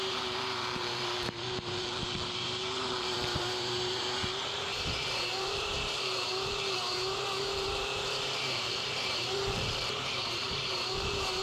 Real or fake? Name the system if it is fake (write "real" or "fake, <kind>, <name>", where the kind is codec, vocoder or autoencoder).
fake, vocoder, BigVGAN v2